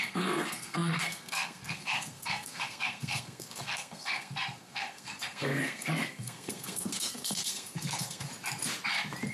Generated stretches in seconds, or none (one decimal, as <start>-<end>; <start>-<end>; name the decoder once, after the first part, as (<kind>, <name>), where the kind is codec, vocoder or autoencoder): 0.0-8.3 (codec, SNAC)